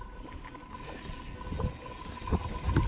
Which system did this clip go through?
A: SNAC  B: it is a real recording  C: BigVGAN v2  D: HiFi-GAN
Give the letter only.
B